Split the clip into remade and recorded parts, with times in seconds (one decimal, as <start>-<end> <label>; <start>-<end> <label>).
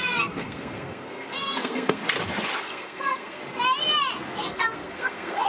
0.0-2.0 remade; 2.0-2.6 recorded; 2.6-3.4 remade; 3.4-4.4 recorded; 4.4-5.5 remade